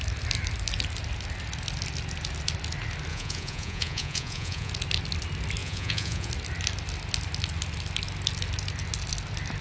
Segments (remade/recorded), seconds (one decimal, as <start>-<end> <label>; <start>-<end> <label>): 0.0-3.1 recorded; 3.1-4.7 remade; 4.7-5.6 recorded; 5.6-6.3 remade; 6.3-9.6 recorded